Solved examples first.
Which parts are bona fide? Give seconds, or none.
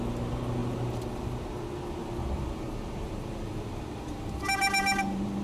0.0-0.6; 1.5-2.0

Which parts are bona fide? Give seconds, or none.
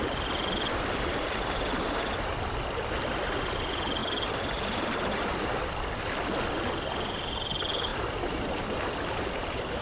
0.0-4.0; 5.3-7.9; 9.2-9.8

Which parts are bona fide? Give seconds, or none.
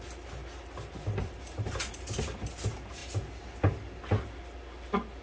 0.0-5.2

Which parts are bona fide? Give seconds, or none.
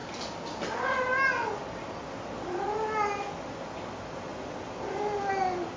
0.0-4.3; 5.3-5.8